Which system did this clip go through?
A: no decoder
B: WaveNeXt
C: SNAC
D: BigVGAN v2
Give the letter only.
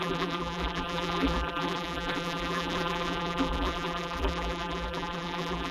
D